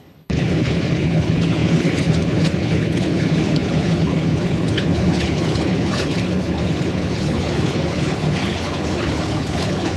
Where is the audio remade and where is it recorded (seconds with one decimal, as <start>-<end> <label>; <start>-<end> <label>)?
0.0-10.0 remade